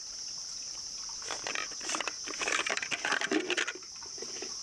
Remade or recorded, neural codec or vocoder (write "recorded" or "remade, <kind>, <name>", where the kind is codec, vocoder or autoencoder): recorded